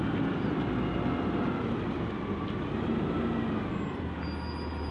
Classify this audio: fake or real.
real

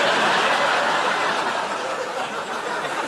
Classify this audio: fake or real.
real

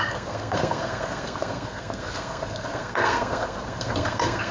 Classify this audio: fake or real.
fake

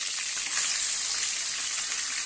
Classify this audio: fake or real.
real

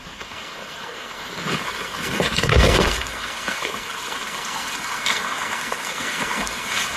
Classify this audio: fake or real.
fake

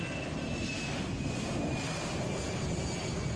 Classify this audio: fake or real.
real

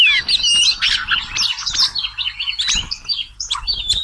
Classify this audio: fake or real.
real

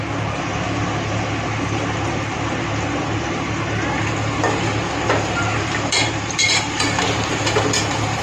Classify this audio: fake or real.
real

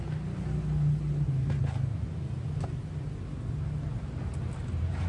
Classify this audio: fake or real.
real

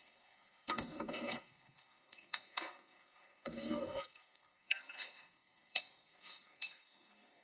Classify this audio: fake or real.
fake